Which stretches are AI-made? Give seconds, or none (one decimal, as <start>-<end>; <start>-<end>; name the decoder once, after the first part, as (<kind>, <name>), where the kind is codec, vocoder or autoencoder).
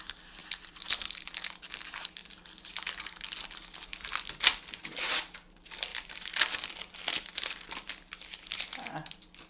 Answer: 0.4-1.3 (vocoder, BigVGAN v2); 5.9-6.7